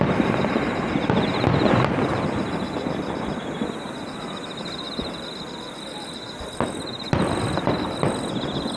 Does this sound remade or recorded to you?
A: recorded